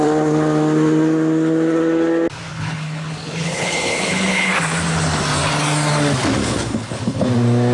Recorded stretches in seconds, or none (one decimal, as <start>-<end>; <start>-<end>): 0.0-2.5; 4.5-6.4; 7.3-7.7